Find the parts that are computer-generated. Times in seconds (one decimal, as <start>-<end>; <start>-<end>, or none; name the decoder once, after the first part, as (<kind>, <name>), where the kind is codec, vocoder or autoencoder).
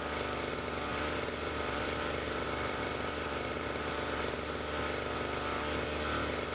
0.9-4.4 (vocoder, BigVGAN v2)